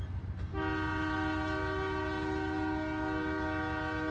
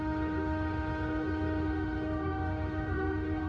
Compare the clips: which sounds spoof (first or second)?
second